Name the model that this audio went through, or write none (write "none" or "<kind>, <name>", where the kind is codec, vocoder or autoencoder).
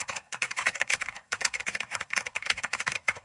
codec, SNAC